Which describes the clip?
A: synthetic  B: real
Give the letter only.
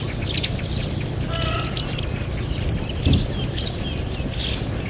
B